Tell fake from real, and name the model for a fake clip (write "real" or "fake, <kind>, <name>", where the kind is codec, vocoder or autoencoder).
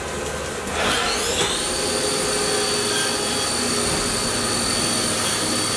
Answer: real